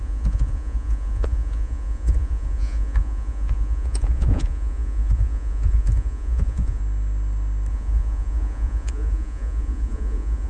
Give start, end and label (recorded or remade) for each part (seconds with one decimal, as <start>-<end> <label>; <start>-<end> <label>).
0.0-6.8 remade; 6.8-7.7 recorded; 7.7-10.5 remade